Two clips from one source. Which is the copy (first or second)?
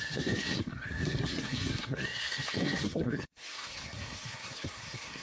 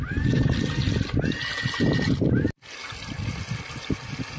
first